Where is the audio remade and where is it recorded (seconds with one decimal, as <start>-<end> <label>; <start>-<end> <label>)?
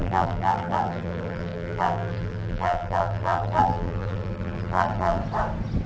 0.0-5.2 remade; 5.2-5.9 recorded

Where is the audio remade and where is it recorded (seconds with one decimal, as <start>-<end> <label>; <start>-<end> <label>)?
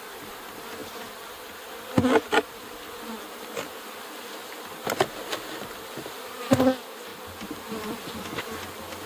0.0-9.1 recorded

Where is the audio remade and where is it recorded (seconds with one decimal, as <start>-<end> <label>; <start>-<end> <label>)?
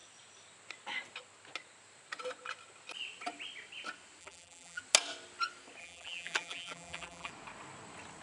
0.0-4.2 recorded; 4.2-4.8 remade; 4.8-5.8 recorded; 5.8-7.3 remade; 7.3-8.2 recorded